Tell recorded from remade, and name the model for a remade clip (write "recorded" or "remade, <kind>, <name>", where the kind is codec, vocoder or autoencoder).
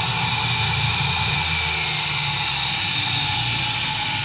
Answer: recorded